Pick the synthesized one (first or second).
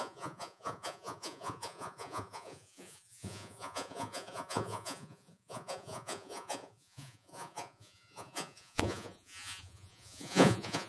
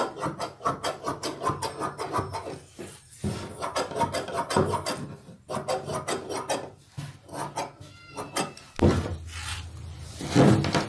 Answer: first